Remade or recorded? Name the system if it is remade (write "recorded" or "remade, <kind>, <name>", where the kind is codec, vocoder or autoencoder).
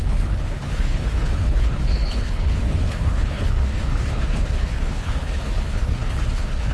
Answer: remade, codec, HILCodec